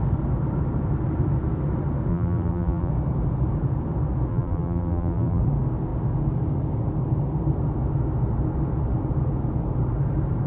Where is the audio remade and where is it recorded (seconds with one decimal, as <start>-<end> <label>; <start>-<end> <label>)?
0.0-2.1 recorded; 2.1-2.9 remade; 2.9-4.3 recorded; 4.3-5.4 remade; 5.4-10.5 recorded